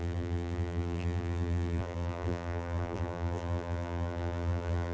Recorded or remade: remade